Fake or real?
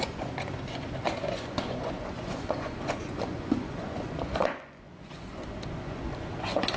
fake